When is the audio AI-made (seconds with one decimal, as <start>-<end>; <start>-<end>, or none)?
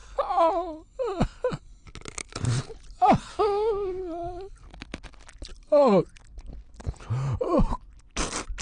3.3-4.0